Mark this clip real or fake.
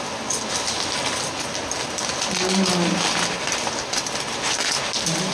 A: real